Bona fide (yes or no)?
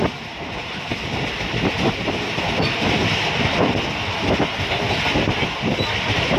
yes